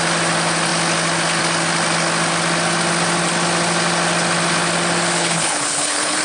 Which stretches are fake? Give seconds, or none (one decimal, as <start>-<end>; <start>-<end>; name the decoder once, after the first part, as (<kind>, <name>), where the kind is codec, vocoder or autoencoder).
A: 5.2-6.2 (codec, HILCodec)